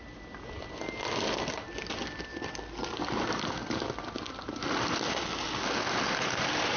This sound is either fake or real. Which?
real